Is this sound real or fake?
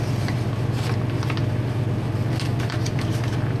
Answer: real